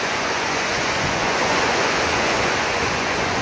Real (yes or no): no